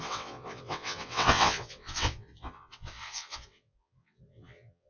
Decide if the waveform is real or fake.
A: fake